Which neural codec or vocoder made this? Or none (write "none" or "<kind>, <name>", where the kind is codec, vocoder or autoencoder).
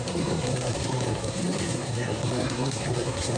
codec, SNAC